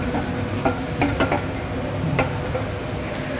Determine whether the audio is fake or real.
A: real